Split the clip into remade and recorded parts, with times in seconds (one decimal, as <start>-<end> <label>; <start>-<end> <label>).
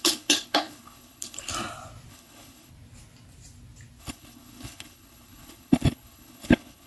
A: 0.0-1.5 remade; 1.5-2.1 recorded; 2.1-2.7 remade; 2.7-4.0 recorded; 4.0-6.9 remade